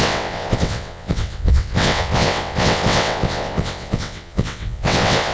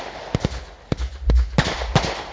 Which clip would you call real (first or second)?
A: second